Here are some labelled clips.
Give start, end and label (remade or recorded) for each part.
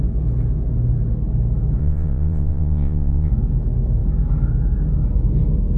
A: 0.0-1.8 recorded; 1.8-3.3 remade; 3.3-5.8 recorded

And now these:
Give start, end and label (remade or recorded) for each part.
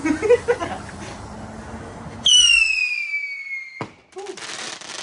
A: 0.0-5.0 recorded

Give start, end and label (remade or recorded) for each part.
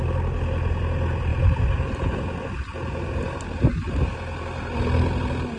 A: 0.0-5.6 recorded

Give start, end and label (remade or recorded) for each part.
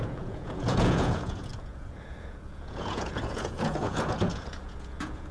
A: 0.0-5.3 remade